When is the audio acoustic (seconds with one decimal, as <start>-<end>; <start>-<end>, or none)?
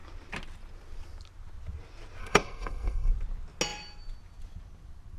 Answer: 0.0-2.2; 3.1-5.2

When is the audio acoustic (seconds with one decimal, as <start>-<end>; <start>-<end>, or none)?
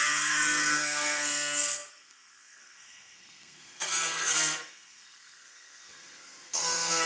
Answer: none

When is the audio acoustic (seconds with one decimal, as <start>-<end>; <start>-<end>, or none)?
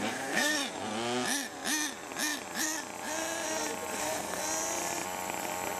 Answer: 0.5-4.0; 4.4-5.8